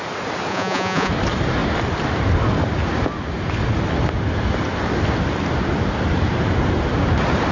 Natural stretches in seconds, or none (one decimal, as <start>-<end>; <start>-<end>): 0.0-0.5; 1.1-7.5